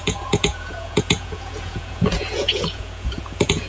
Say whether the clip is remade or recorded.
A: remade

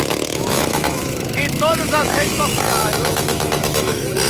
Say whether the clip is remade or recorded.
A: remade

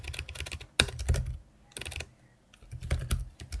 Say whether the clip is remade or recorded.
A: recorded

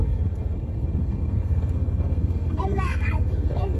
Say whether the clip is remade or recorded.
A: remade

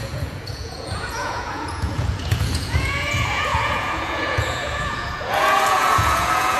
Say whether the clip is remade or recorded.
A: remade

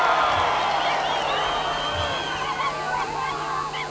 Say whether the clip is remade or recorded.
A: recorded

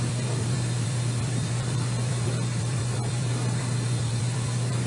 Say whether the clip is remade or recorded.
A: remade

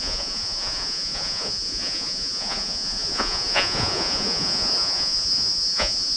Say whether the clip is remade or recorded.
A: remade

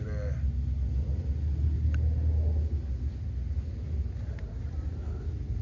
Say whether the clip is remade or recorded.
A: recorded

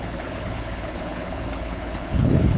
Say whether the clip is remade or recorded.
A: remade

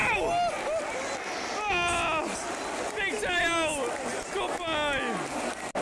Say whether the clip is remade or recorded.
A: recorded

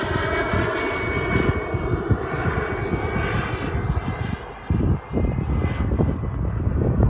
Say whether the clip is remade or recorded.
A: recorded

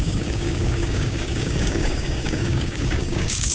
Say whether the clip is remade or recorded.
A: remade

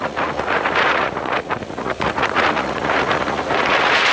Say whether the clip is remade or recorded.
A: remade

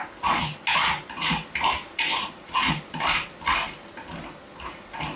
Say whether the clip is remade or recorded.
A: recorded